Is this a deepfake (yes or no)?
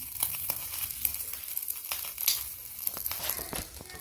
no